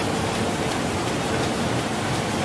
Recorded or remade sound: recorded